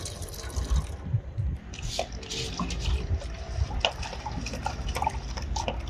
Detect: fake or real real